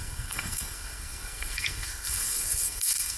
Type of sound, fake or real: fake